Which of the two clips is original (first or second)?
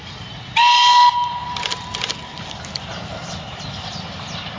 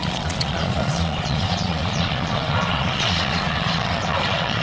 first